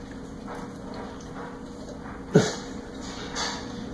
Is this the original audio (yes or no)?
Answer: yes